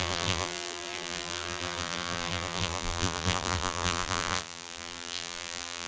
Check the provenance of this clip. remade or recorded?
remade